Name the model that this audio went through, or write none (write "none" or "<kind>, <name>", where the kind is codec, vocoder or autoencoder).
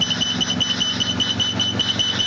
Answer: none